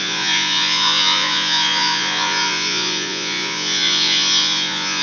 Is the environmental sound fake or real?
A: fake